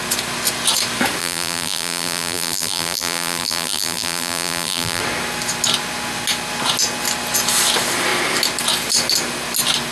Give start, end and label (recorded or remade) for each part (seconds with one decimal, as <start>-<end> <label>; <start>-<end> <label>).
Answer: 0.0-1.2 recorded; 1.2-5.0 remade; 5.0-9.9 recorded

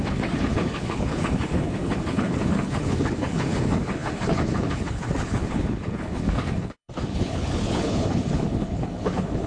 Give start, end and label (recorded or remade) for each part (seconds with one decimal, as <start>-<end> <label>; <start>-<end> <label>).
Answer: 0.0-9.5 remade

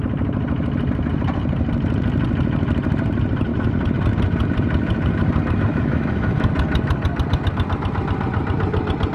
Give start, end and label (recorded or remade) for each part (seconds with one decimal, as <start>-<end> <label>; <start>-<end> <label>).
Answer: 0.0-5.7 recorded; 5.7-6.5 remade; 6.5-9.1 recorded